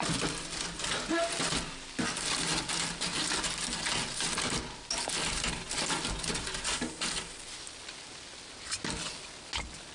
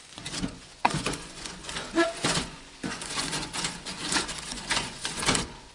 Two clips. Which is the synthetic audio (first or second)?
second